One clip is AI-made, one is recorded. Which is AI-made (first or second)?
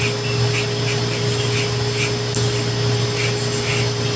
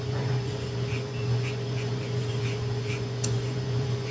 second